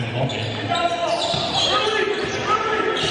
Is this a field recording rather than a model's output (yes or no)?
yes